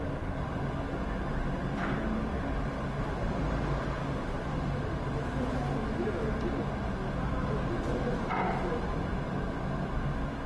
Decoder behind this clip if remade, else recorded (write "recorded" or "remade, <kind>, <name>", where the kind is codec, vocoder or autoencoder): recorded